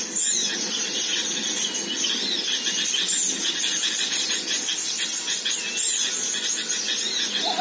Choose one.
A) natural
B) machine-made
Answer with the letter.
A